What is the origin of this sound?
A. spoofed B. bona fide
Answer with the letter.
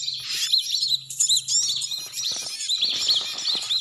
B